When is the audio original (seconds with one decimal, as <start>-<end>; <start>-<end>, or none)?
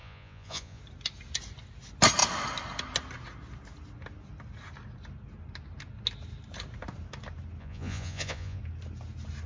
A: 0.8-7.6; 8.6-9.5